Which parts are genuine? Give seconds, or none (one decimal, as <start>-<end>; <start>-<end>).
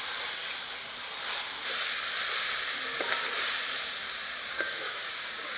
0.0-4.3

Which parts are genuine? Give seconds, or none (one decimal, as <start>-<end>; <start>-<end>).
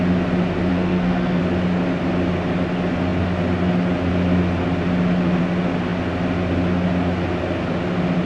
0.0-0.7; 1.4-8.3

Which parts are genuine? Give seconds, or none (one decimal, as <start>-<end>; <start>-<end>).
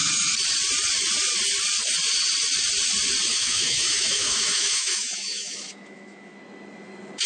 0.0-3.3; 6.4-7.3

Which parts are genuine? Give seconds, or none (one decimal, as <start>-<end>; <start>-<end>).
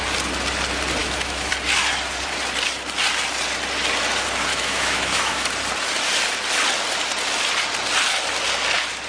0.0-1.0; 1.5-4.5; 5.4-9.1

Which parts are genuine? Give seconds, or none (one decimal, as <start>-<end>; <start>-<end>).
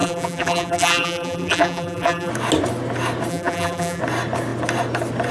2.3-3.3; 4.0-5.3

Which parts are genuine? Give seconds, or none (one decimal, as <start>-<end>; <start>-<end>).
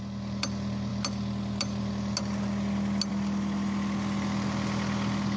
0.0-5.4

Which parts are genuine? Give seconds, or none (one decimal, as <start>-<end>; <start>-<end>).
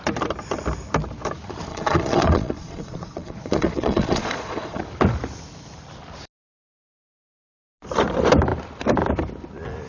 0.0-1.7; 4.8-9.9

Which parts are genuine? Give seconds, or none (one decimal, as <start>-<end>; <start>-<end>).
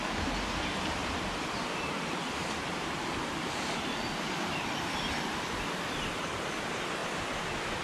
0.0-1.0; 5.5-7.8